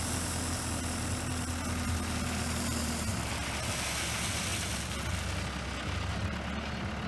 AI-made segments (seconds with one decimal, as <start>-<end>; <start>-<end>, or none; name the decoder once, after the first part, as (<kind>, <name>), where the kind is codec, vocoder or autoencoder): none